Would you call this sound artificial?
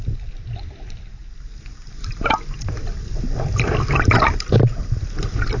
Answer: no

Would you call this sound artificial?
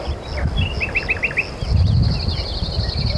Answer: no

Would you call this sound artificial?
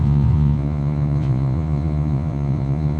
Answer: yes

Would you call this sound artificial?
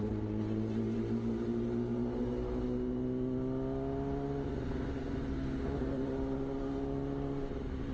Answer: no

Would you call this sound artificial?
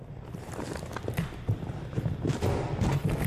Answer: no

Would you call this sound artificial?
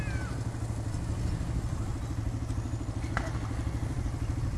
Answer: no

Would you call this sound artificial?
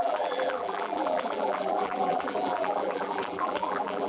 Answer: yes